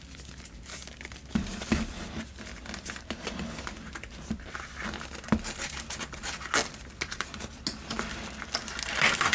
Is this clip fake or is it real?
real